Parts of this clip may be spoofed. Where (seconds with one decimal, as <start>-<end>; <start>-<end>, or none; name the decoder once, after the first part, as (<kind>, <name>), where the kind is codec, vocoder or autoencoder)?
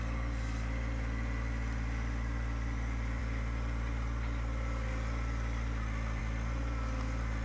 none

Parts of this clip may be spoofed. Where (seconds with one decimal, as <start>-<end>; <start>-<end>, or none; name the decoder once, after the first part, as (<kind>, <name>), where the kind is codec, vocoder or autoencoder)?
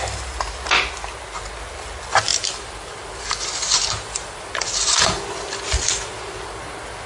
2.3-6.6 (vocoder, BigVGAN v2)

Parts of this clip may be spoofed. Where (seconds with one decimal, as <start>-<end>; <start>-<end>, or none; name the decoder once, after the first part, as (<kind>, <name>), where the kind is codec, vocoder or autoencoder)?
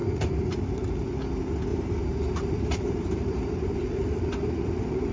0.0-1.2 (vocoder, BigVGAN v2); 1.7-5.1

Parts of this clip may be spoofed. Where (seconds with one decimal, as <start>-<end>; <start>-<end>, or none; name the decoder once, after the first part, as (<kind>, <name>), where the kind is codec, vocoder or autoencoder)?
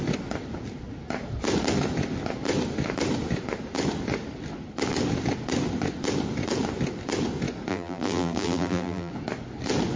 7.7-9.1 (vocoder, BigVGAN v2)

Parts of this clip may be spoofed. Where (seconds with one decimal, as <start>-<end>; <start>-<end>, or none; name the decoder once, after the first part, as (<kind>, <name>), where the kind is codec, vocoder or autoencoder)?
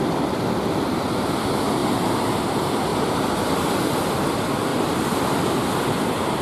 1.8-2.3 (vocoder, BigVGAN v2); 4.7-5.7